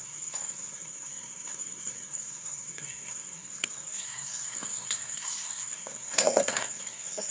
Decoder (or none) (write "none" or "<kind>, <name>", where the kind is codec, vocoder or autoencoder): codec, SNAC